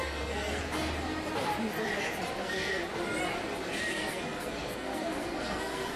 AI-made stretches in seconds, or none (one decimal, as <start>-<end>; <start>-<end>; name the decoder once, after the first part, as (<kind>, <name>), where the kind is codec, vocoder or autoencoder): 0.0-0.6 (codec, SNAC); 2.4-2.8; 3.8-6.0